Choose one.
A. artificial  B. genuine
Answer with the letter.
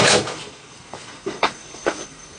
A